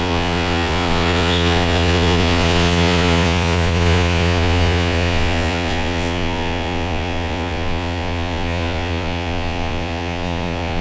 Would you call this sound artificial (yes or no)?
yes